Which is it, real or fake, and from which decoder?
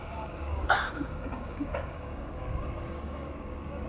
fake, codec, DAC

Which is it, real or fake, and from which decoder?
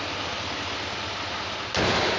real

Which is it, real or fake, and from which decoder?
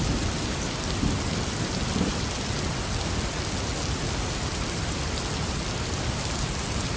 real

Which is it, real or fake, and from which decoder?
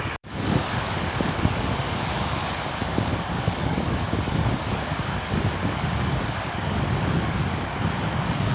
fake, codec, DAC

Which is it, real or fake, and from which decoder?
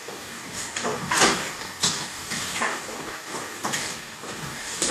fake, codec, DAC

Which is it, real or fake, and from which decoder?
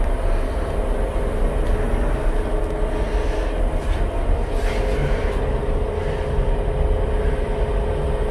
real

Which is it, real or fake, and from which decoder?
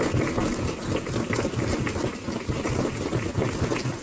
real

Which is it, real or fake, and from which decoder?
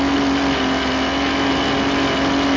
real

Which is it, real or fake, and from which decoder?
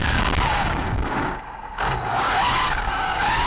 fake, codec, DAC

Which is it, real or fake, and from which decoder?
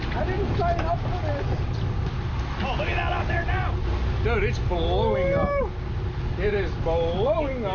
real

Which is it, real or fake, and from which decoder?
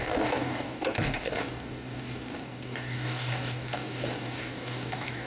fake, codec, DAC